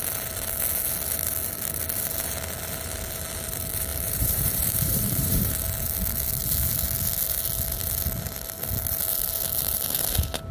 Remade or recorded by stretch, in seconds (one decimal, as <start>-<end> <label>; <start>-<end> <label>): 0.0-3.9 recorded; 3.9-5.6 remade; 5.6-10.5 recorded